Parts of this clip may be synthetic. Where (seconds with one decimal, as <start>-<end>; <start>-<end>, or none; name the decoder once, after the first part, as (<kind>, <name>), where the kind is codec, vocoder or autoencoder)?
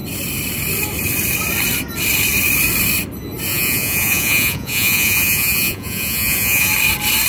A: 3.5-6.7 (vocoder, Vocos)